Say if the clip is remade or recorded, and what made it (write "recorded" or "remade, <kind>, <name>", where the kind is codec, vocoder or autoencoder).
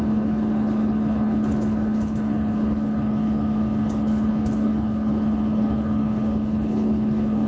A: remade, codec, HILCodec